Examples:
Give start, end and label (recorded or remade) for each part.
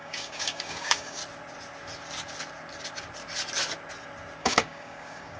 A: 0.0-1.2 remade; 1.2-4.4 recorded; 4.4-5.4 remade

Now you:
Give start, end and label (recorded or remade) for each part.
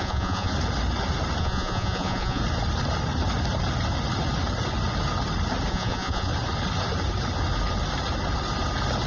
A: 0.0-0.5 remade; 0.5-1.4 recorded; 1.4-2.4 remade; 2.4-5.7 recorded; 5.7-6.3 remade; 6.3-9.1 recorded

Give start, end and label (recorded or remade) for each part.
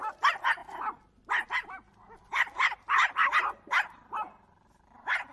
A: 0.0-5.3 recorded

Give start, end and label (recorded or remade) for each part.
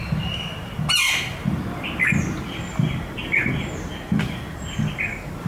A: 0.0-5.5 recorded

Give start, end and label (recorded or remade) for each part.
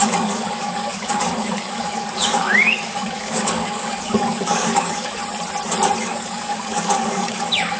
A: 0.0-5.2 remade; 5.2-6.0 recorded; 6.0-7.8 remade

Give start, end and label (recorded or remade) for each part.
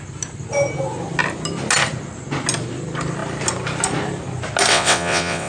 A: 0.0-4.7 recorded; 4.7-5.5 remade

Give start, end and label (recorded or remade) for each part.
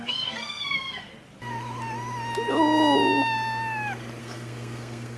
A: 0.0-1.1 remade; 1.1-4.2 recorded; 4.2-5.2 remade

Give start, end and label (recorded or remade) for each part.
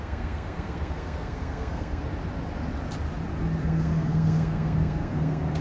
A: 0.0-2.0 remade; 2.0-3.6 recorded; 3.6-5.6 remade